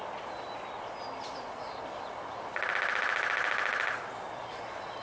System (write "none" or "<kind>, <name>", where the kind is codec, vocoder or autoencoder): none